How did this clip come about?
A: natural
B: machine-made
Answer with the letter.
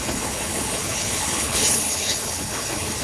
B